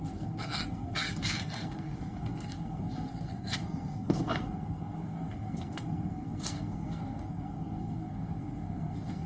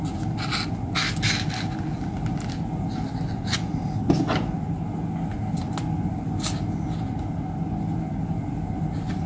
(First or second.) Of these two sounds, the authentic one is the second